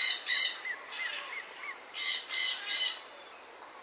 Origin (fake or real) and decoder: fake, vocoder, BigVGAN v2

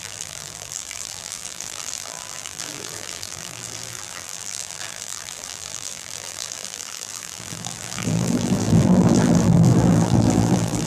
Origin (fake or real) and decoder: fake, vocoder, BigVGAN v2